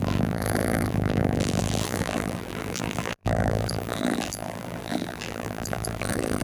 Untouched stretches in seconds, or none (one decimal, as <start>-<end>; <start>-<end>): none